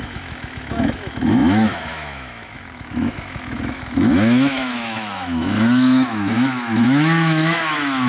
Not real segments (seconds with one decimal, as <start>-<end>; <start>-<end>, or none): 0.0-8.1